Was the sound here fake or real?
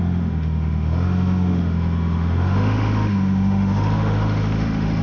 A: fake